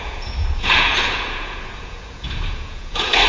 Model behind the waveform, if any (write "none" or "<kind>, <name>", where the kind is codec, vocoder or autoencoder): vocoder, Vocos